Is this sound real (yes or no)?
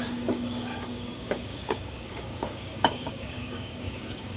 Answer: no